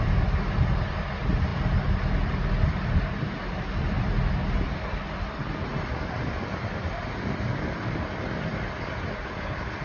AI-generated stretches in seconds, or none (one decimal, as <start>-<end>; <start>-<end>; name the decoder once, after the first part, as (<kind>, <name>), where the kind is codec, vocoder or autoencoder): none